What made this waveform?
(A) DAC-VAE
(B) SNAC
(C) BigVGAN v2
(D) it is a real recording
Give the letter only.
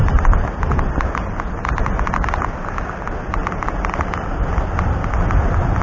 D